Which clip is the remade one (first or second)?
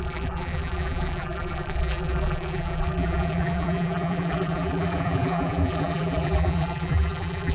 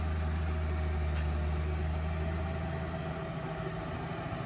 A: first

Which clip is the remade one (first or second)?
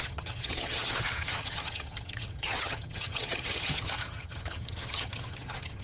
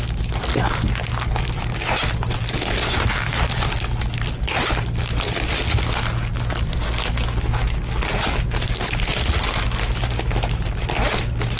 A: first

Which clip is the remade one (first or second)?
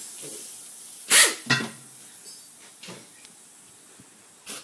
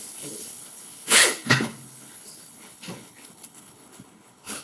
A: second